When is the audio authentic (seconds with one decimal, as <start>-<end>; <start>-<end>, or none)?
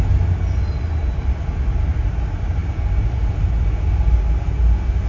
0.0-5.1